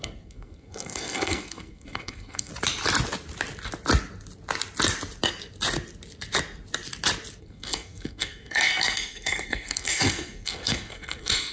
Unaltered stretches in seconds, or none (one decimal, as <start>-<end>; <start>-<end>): 2.5-7.4